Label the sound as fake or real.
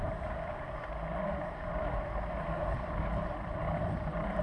real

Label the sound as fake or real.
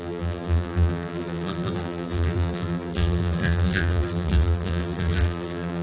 fake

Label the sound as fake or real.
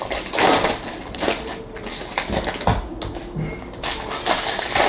real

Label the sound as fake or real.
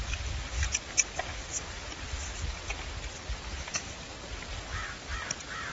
real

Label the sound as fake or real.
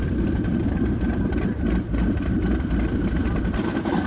fake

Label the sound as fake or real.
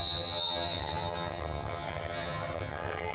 fake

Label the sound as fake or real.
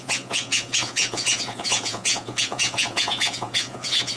fake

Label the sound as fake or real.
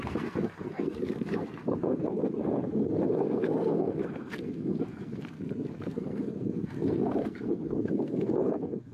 fake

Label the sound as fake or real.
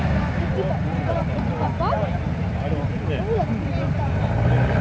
real